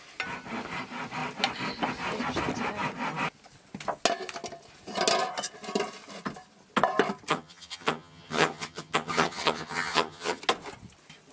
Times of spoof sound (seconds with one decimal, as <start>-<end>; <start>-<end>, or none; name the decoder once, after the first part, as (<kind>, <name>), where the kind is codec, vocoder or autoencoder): 7.3-10.4 (vocoder, HiFi-GAN)

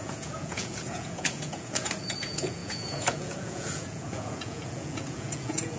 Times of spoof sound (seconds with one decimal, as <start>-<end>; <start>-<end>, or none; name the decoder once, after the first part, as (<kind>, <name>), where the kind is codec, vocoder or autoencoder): 0.0-5.8 (vocoder, Vocos)

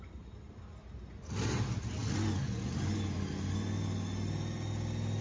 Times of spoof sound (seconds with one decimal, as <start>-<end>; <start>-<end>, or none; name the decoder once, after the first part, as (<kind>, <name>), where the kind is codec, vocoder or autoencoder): none

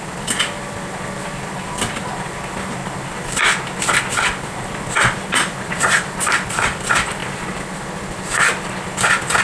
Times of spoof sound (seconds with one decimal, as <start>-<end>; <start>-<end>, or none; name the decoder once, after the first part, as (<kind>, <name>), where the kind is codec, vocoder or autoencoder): 0.0-2.8 (vocoder, BigVGAN v2); 4.1-5.2; 5.8-7.2